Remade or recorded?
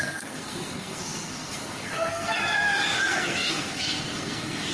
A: remade